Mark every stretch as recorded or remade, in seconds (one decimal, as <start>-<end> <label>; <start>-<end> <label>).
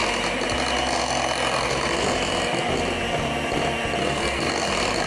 0.0-4.0 recorded; 4.0-4.5 remade; 4.5-5.1 recorded